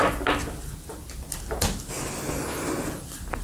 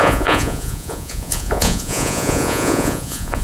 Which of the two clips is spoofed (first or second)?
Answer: second